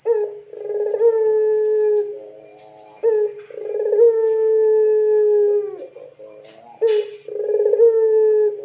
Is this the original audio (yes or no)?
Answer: yes